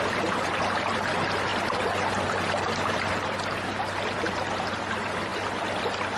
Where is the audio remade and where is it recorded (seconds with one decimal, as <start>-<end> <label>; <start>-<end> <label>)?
0.0-6.2 recorded